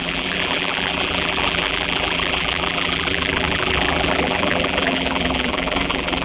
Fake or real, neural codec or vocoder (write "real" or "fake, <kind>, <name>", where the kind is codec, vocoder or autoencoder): fake, vocoder, BigVGAN v2